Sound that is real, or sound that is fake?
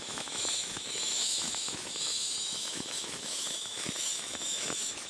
fake